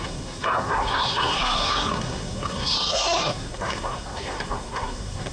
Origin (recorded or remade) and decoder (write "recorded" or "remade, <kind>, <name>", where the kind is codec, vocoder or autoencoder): remade, codec, SNAC